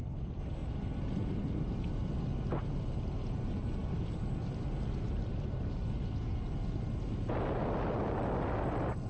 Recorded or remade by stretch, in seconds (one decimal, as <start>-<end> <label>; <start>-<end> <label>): 0.0-9.1 recorded